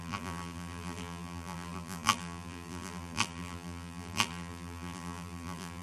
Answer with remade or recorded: remade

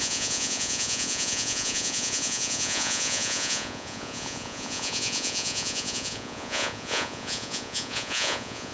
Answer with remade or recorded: remade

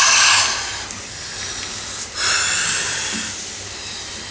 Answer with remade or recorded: recorded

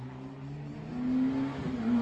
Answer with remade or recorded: recorded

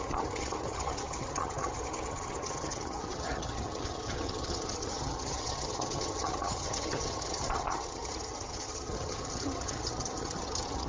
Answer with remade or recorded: remade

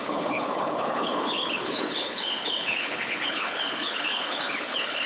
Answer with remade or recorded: remade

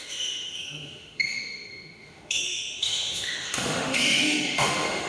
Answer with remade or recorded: remade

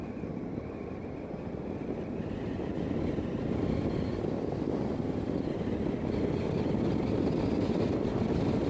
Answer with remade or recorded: recorded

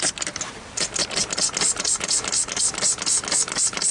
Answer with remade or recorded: recorded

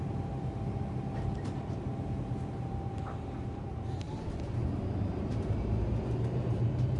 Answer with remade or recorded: remade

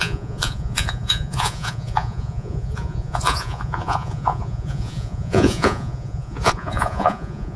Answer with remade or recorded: remade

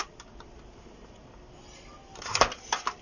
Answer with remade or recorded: recorded